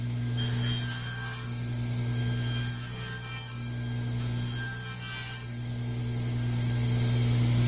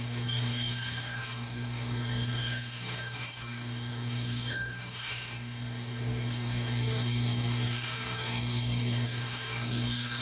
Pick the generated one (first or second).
second